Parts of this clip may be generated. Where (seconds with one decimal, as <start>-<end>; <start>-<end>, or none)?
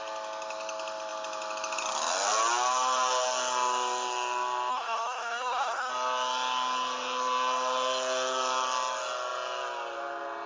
4.7-5.9